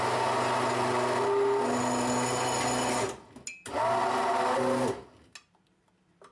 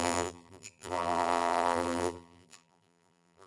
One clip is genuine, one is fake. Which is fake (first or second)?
second